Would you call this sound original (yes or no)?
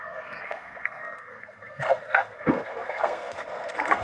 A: no